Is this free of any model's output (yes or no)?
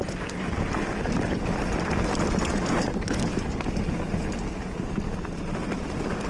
yes